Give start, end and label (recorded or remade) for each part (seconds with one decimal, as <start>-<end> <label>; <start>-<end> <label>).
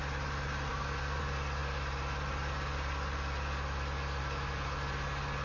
0.0-0.7 recorded; 0.7-1.2 remade; 1.2-5.4 recorded